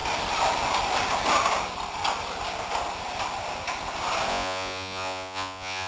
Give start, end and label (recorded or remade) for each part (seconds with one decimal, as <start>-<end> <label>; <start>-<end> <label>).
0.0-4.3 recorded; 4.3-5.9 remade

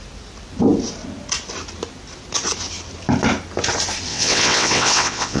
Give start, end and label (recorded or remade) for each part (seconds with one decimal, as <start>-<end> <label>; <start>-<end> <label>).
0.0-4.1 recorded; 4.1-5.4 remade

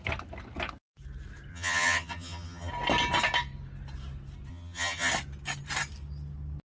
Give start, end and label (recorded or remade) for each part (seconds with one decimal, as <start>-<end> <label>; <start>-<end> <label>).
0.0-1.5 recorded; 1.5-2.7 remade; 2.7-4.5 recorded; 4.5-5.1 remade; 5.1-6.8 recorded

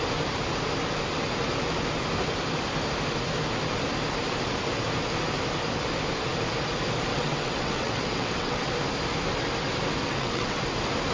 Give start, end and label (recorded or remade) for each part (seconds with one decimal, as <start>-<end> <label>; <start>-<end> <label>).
0.0-7.1 recorded; 7.1-8.7 remade; 8.7-10.0 recorded; 10.0-10.6 remade; 10.6-11.1 recorded